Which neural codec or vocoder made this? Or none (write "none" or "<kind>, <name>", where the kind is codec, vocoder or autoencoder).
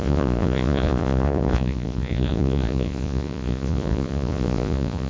vocoder, Vocos